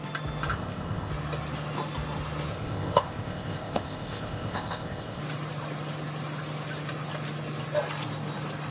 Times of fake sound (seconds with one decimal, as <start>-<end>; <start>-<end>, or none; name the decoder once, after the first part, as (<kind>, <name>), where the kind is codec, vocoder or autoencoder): 0.5-1.1 (codec, ZipCodec); 2.5-5.2

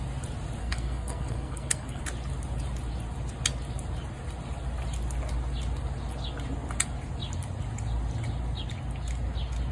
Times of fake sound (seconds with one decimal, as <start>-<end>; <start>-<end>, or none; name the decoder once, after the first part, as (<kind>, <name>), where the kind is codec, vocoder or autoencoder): 0.6-2.0 (codec, SNAC)

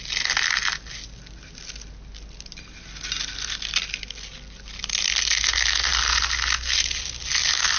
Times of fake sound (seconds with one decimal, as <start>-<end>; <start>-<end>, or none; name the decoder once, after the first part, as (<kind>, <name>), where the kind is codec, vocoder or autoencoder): none

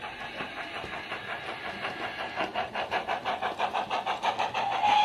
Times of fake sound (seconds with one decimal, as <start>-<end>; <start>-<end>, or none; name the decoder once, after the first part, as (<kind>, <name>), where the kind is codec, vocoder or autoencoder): none

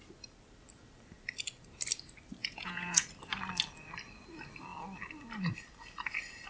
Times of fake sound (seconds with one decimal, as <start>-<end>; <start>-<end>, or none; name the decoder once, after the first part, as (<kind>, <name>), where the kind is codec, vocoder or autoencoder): 2.4-3.1 (vocoder, Vocos)

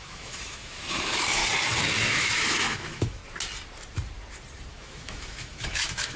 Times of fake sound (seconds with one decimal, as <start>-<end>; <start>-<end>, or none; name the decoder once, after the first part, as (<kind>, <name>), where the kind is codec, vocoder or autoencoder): 0.0-1.4 (autoencoder, DAC-VAE); 2.0-3.2; 4.7-6.2

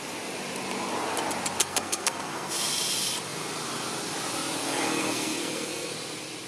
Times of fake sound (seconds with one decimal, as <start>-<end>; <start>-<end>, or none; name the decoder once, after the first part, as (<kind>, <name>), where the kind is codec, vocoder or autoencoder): 1.6-2.5 (codec, SNAC); 4.6-5.9

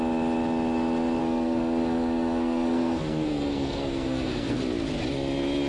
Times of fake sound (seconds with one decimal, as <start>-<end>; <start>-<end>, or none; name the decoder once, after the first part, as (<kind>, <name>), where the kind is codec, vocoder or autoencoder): 1.2-4.6 (codec, SNAC)